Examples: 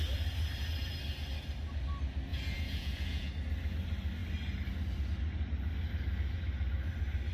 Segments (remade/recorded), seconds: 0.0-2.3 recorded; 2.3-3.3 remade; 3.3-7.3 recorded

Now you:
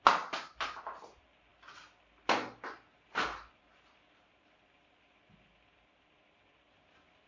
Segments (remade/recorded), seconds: 0.0-7.3 recorded

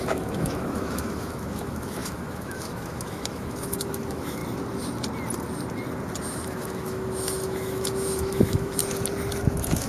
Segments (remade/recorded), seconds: 0.0-4.4 remade; 4.4-6.2 recorded; 6.2-8.8 remade; 8.8-9.5 recorded; 9.5-9.9 remade